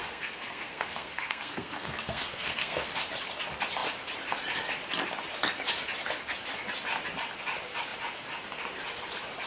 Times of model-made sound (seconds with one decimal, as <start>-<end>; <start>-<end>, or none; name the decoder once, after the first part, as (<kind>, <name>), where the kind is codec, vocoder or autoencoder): 0.0-2.9 (codec, SNAC)